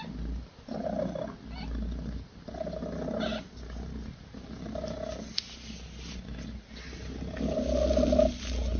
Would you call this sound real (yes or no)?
yes